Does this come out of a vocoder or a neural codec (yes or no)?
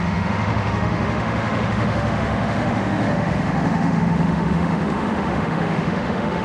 yes